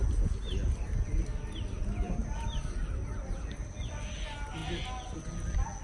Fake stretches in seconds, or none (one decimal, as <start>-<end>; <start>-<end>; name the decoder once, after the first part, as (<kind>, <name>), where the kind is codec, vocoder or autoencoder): none